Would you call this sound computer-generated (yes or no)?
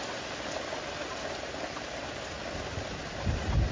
no